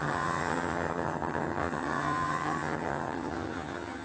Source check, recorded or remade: remade